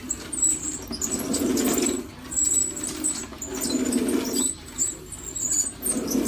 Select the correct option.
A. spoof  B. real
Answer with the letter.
B